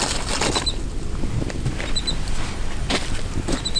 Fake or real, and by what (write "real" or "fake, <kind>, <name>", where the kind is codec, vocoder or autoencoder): real